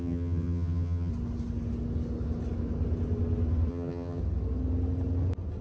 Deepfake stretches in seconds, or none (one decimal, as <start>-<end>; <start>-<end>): 0.0-1.1; 3.7-4.2